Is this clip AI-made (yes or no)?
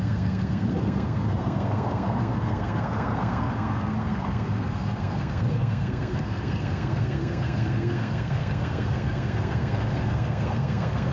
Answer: yes